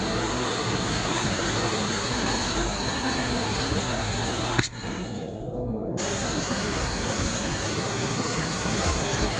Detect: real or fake fake